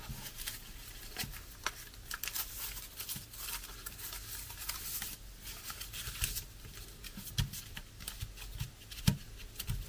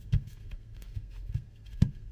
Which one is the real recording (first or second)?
first